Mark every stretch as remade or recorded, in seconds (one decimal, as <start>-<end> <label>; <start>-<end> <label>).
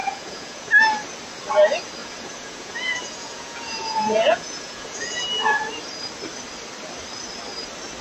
0.0-0.7 remade; 0.7-2.0 recorded; 2.0-5.2 remade; 5.2-8.0 recorded